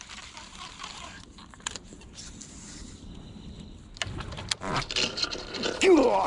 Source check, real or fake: real